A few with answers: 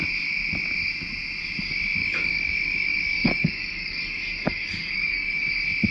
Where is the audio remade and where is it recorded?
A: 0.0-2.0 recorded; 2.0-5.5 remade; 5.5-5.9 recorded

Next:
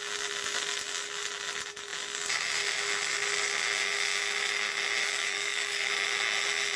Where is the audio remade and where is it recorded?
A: 0.0-5.0 recorded; 5.0-5.9 remade; 5.9-6.8 recorded

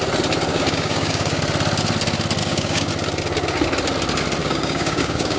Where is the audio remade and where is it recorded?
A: 0.0-0.5 recorded; 0.5-1.4 remade; 1.4-2.4 recorded; 2.4-2.9 remade; 2.9-4.4 recorded; 4.4-5.4 remade

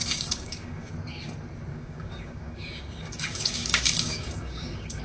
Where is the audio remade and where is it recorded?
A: 0.0-0.9 remade; 0.9-1.7 recorded; 1.7-5.0 remade

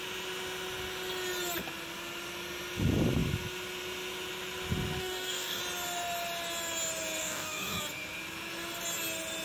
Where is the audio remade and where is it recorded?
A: 0.0-5.0 recorded; 5.0-5.6 remade; 5.6-7.2 recorded; 7.2-7.8 remade; 7.8-9.4 recorded

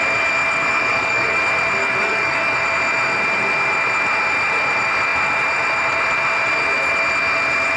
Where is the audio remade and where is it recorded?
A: 0.0-0.7 recorded; 0.7-1.4 remade; 1.4-1.8 recorded; 1.8-2.6 remade; 2.6-7.8 recorded

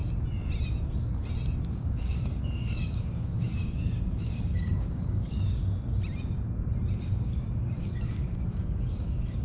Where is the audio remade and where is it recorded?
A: 0.0-1.7 recorded; 1.7-5.6 remade; 5.6-7.0 recorded; 7.0-9.4 remade